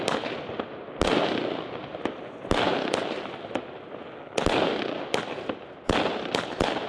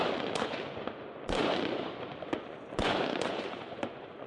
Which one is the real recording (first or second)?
first